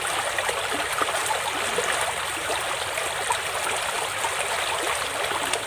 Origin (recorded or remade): recorded